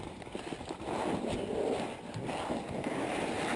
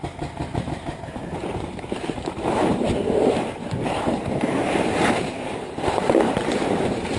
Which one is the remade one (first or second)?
second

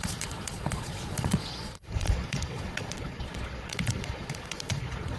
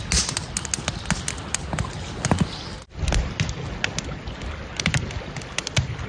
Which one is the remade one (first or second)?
first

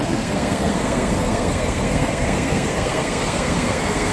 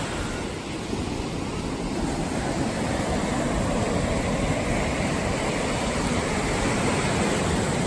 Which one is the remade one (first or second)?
first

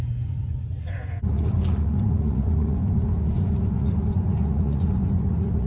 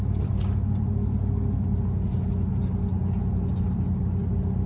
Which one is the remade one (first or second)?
first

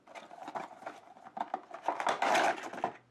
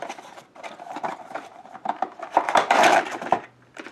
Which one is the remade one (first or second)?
second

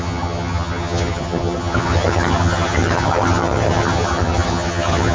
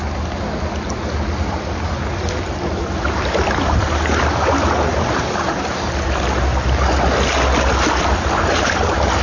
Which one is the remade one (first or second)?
first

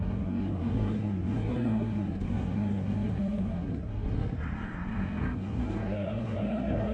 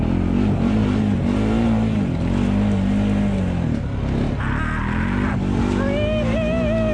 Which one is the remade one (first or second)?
first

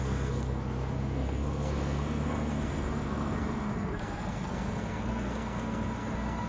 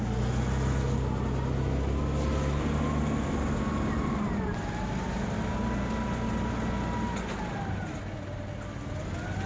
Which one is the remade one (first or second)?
first